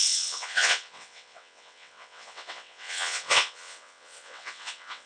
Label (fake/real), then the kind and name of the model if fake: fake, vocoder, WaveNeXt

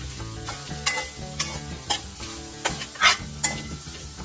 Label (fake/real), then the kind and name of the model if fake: real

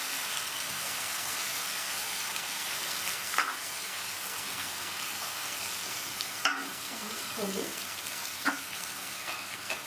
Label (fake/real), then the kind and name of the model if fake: fake, codec, SNAC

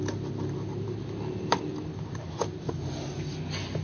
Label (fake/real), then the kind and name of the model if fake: real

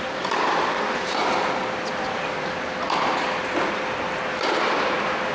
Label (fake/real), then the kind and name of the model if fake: real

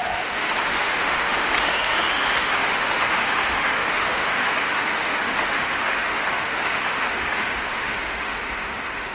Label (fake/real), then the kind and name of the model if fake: fake, autoencoder, DAC-VAE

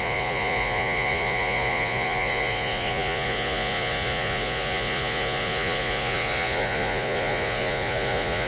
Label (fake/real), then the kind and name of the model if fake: fake, vocoder, Vocos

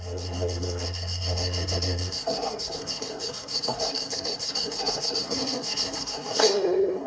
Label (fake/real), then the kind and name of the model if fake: fake, codec, SNAC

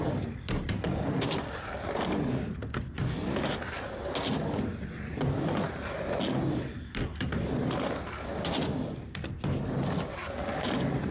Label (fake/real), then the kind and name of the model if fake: real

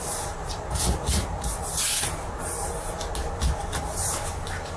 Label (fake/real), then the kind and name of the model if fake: real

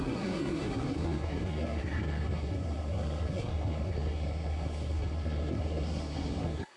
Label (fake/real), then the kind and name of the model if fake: fake, codec, SNAC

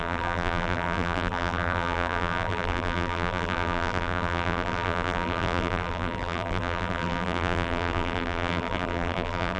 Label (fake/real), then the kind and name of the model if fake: fake, vocoder, BigVGAN v2